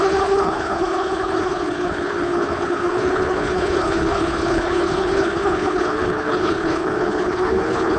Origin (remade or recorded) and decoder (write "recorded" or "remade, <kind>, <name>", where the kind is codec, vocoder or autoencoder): remade, codec, HILCodec